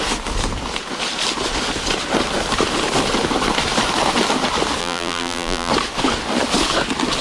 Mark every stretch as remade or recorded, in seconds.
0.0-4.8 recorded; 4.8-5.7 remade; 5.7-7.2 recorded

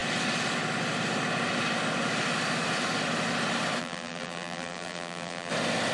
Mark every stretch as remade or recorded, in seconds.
0.0-3.8 recorded; 3.8-5.5 remade; 5.5-5.9 recorded

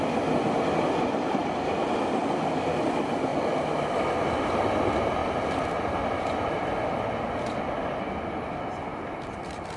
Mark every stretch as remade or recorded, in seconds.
0.0-3.3 recorded; 3.3-4.7 remade; 4.7-5.2 recorded; 5.2-6.8 remade; 6.8-8.9 recorded; 8.9-9.8 remade

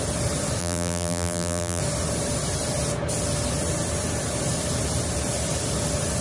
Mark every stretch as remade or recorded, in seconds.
0.0-0.6 recorded; 0.6-1.8 remade; 1.8-6.2 recorded